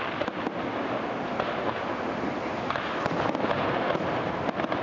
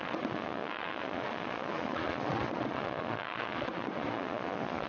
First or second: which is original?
first